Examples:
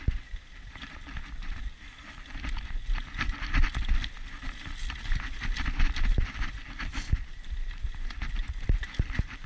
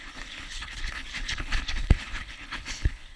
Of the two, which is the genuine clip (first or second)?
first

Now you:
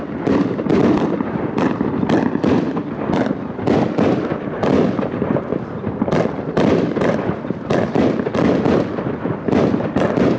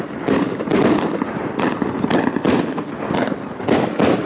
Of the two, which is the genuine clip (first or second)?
second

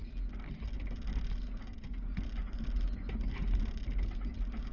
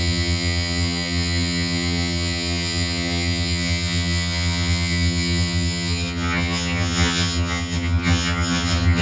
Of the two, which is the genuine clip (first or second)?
first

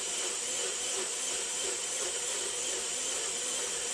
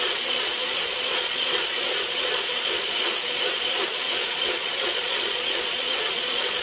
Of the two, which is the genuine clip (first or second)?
first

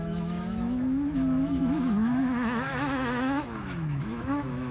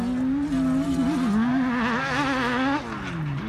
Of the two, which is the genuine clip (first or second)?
second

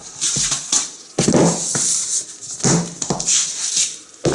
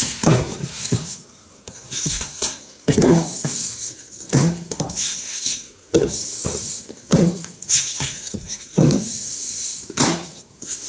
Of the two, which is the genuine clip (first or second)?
first